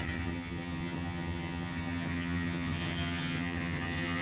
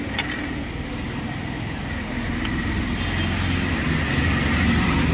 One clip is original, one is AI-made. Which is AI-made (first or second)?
first